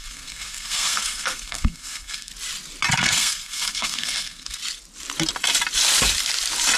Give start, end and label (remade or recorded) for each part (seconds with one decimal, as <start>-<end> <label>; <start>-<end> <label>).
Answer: 0.0-2.3 remade; 2.3-2.9 recorded; 2.9-4.6 remade; 4.6-6.8 recorded